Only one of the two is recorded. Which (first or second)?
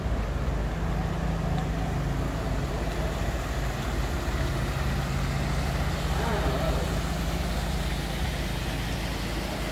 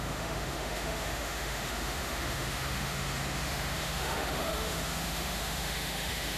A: first